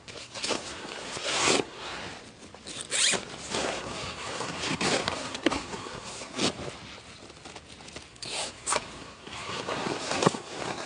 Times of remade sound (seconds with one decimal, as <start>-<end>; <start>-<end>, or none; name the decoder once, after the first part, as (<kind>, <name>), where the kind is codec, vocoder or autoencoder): 0.0-2.0 (codec, SNAC); 3.5-6.4; 8.1-10.9